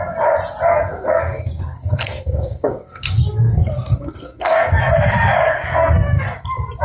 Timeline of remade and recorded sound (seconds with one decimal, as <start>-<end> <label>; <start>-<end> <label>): 0.0-0.7 recorded; 0.7-4.8 remade; 4.8-5.5 recorded; 5.5-6.2 remade; 6.2-6.8 recorded